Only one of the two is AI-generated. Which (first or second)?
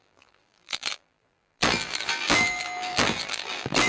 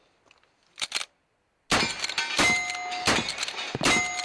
first